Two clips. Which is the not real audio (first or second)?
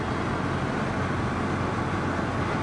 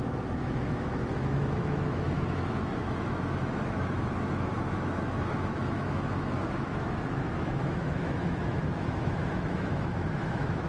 second